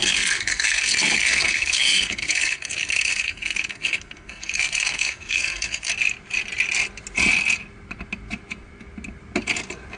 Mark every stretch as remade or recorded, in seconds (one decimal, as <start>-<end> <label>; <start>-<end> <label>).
0.0-5.9 remade; 5.9-10.0 recorded